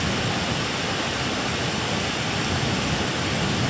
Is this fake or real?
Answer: real